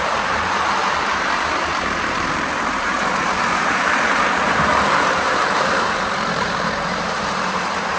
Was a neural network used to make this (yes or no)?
yes